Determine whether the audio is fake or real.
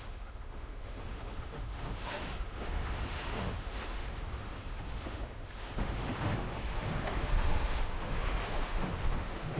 fake